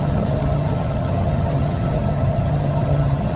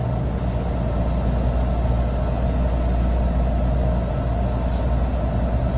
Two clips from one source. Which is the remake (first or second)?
first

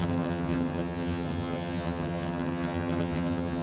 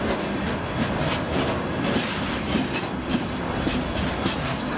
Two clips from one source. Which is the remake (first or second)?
first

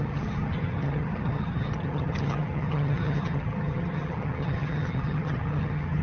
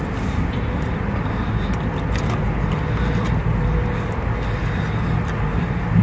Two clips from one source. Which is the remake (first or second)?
first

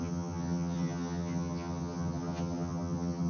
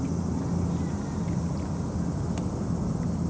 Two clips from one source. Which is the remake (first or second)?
first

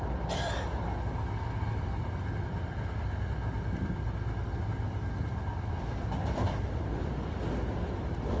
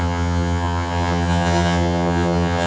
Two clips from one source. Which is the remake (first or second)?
second